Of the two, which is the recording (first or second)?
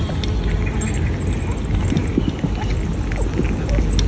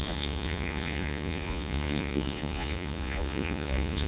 first